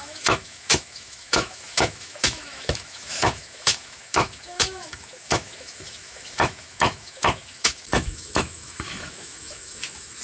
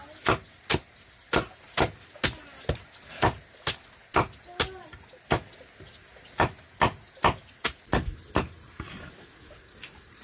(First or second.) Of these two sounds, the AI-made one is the first